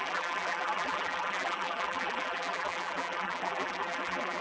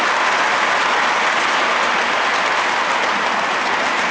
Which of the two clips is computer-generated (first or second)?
first